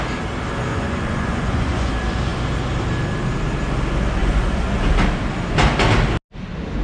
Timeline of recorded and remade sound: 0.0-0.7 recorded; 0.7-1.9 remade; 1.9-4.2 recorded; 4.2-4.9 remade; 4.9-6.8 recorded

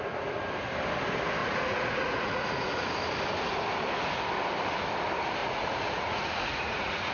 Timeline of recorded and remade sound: 0.0-1.4 recorded; 1.4-2.9 remade; 2.9-5.4 recorded; 5.4-7.1 remade

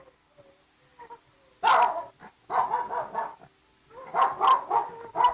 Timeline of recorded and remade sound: 0.0-5.3 recorded

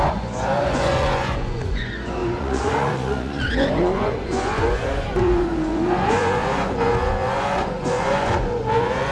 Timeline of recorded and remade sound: 0.0-9.1 remade

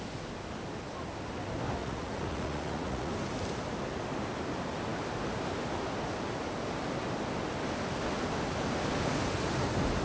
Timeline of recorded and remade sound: 0.0-1.8 recorded; 1.8-3.1 remade; 3.1-10.0 recorded

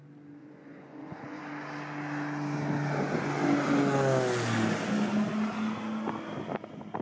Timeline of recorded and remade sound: 0.0-0.4 recorded; 0.4-1.4 remade; 1.4-7.0 recorded

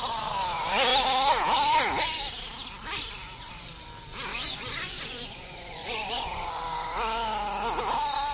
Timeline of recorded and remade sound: 0.0-4.3 recorded; 4.3-6.6 remade; 6.6-8.3 recorded

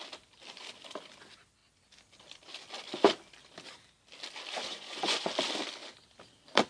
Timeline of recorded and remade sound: 0.0-4.7 recorded; 4.7-5.3 remade; 5.3-6.7 recorded